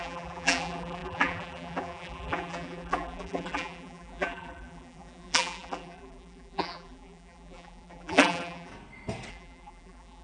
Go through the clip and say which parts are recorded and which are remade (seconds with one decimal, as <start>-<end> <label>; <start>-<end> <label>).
0.0-8.7 remade; 8.7-9.3 recorded; 9.3-10.2 remade